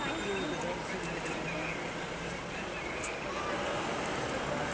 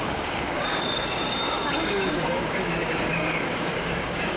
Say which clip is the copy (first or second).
second